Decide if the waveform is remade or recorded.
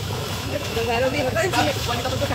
remade